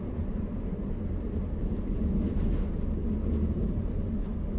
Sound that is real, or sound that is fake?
real